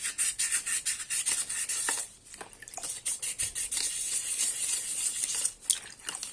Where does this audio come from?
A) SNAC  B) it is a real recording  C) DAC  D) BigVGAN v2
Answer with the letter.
B